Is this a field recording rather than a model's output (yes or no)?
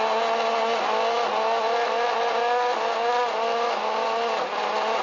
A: yes